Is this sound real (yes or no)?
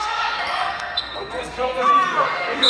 no